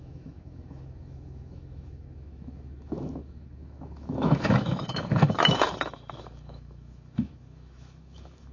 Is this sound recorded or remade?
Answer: remade